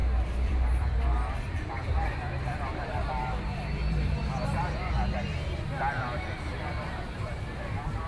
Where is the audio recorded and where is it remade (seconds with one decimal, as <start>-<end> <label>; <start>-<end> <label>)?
0.0-4.9 remade; 4.9-6.5 recorded; 6.5-7.3 remade; 7.3-8.1 recorded